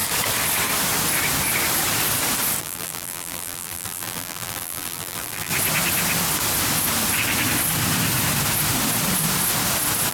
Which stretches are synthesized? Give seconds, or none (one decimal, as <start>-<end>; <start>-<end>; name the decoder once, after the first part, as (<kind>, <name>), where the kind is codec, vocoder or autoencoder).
2.6-5.5 (vocoder, BigVGAN v2)